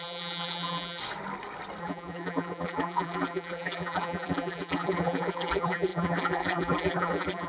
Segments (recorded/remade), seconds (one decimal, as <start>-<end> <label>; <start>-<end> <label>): 0.0-1.0 remade; 1.0-1.8 recorded; 1.8-7.5 remade